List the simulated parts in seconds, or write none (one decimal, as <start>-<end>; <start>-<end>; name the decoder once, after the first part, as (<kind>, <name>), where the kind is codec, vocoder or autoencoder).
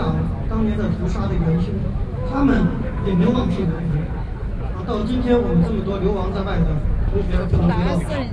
2.5-4.5 (codec, SNAC); 7.0-7.7